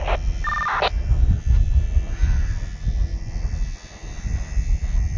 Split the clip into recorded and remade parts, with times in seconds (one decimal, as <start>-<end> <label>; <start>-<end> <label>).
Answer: 0.0-5.2 recorded